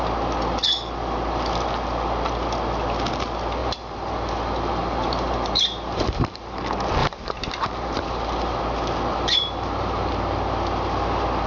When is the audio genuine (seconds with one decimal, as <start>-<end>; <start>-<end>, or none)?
0.0-3.6; 6.6-7.0; 8.6-9.1; 10.1-11.5